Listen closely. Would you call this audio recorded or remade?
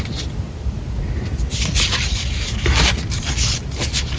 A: recorded